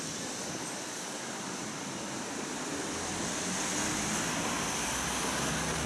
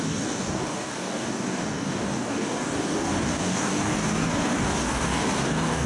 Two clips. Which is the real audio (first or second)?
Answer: first